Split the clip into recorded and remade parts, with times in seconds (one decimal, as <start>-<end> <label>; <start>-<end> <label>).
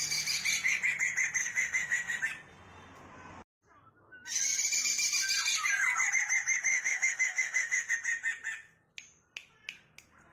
0.0-1.4 recorded; 1.4-2.2 remade; 2.2-6.7 recorded; 6.7-7.9 remade; 7.9-10.3 recorded